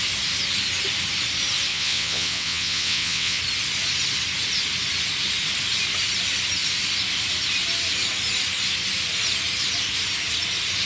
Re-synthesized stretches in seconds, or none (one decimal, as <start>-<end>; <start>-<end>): 1.7-3.4

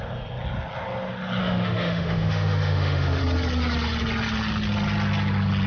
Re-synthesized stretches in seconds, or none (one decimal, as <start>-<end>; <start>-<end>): 1.4-3.2

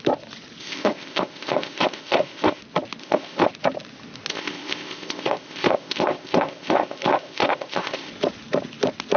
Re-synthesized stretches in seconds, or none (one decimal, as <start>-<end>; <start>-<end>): 0.6-2.6; 3.0-3.5; 4.3-8.1

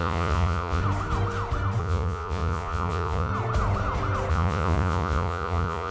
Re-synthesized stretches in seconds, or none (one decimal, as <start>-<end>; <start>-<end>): 0.0-0.8; 1.8-3.3; 4.3-5.9